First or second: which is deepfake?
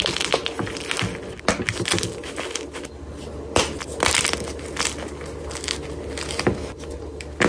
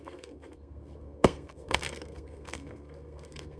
second